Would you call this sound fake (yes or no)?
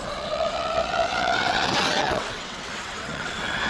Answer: yes